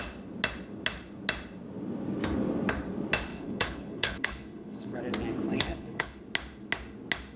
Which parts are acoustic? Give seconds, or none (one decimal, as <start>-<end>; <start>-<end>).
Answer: 0.0-3.3; 5.0-5.5; 6.2-7.4